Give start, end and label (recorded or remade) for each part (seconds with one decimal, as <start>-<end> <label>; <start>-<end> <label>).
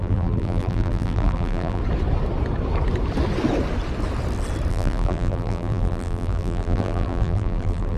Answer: 0.0-1.8 remade; 1.8-4.7 recorded; 4.7-8.0 remade